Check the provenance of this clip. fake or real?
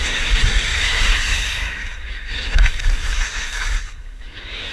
fake